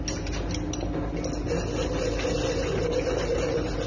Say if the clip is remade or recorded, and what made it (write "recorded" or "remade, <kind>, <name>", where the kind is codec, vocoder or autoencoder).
recorded